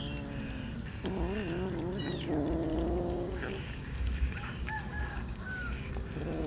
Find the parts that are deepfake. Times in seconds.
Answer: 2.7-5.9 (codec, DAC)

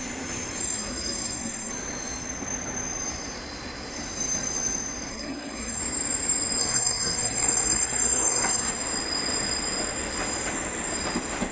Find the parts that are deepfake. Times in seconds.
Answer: 0.6-1.7 (codec, SNAC); 5.1-5.8; 6.6-8.7